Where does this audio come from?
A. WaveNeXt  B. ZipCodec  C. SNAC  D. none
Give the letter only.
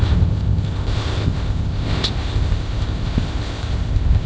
B